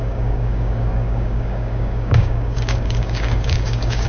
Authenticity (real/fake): fake